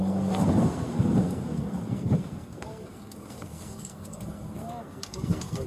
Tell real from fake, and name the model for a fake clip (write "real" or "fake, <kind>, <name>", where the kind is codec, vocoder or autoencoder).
fake, codec, SNAC